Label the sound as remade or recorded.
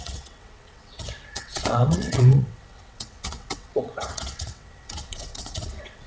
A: remade